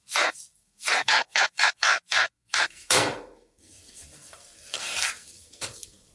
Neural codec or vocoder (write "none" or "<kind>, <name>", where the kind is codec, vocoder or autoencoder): codec, SNAC